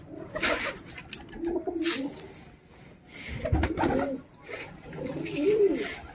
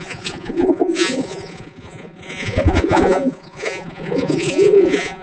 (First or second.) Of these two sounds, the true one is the first